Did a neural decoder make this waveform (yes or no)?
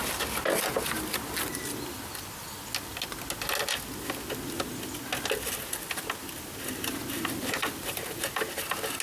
no